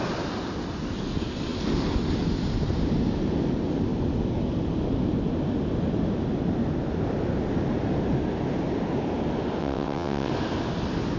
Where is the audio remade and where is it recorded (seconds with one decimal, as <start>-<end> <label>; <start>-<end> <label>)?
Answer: 0.0-9.6 recorded; 9.6-10.3 remade; 10.3-11.2 recorded